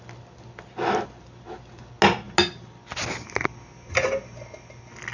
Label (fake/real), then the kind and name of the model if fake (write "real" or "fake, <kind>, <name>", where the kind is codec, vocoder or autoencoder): real